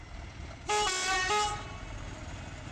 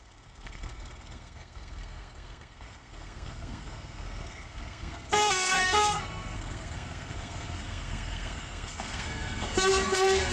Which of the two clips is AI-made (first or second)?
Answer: second